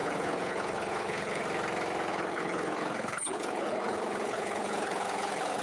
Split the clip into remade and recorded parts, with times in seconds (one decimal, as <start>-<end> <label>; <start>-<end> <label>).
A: 0.0-1.4 remade; 1.4-2.1 recorded; 2.1-5.6 remade

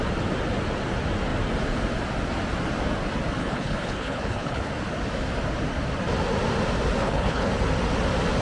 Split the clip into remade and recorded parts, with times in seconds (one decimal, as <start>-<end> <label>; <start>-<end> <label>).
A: 0.0-3.4 recorded; 3.4-4.7 remade; 4.7-7.0 recorded; 7.0-7.5 remade; 7.5-8.4 recorded

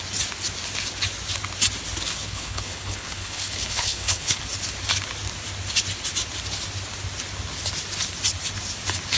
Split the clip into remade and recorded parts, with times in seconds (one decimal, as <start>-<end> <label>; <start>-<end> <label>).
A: 0.0-2.1 recorded; 2.1-4.4 remade; 4.4-9.2 recorded